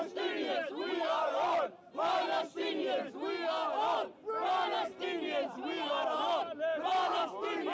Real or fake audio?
real